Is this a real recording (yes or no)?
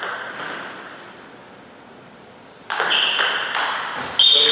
yes